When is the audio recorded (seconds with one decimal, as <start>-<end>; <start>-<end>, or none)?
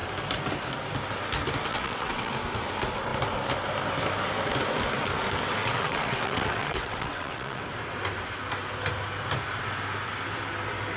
0.0-1.7; 2.3-5.6; 7.6-11.0